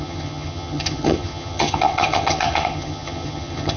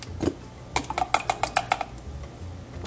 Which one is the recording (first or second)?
second